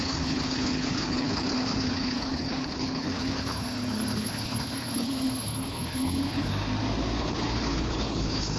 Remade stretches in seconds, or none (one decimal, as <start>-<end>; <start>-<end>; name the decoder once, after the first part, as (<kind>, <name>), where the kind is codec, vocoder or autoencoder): 0.0-6.5 (codec, HILCodec); 7.2-8.6